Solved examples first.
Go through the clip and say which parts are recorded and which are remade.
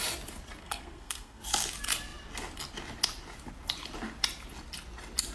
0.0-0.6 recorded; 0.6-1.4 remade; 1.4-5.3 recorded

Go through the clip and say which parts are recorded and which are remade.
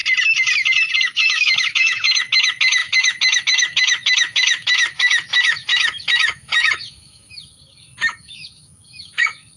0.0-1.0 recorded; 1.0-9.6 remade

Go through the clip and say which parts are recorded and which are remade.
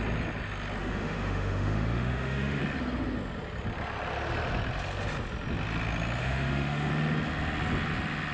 0.0-0.8 recorded; 0.8-2.6 remade; 2.6-6.2 recorded; 6.2-6.9 remade; 6.9-8.3 recorded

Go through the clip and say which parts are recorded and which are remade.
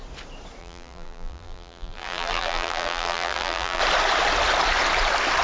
0.0-0.6 recorded; 0.6-3.8 remade; 3.8-5.4 recorded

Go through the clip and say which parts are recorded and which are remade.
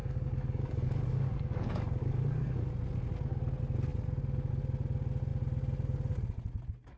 0.0-2.7 remade; 2.7-7.0 recorded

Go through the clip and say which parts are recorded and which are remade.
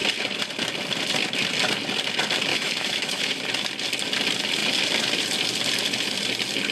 0.0-2.5 recorded; 2.5-3.3 remade; 3.3-6.7 recorded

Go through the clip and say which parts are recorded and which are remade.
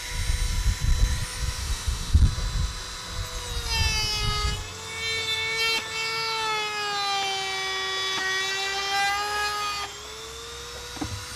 0.0-1.6 recorded; 1.6-2.2 remade; 2.2-11.4 recorded